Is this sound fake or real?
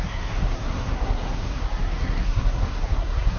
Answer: fake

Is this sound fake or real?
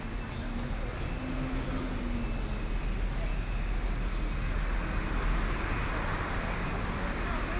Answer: real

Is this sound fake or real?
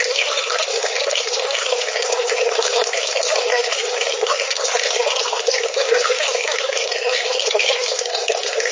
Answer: fake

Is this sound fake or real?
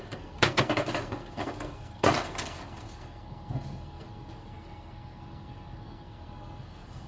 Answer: fake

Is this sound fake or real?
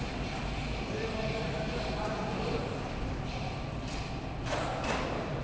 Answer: real